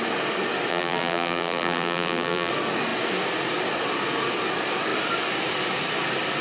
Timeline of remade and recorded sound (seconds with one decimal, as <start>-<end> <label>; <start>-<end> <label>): 0.0-0.7 recorded; 0.7-2.5 remade; 2.5-6.4 recorded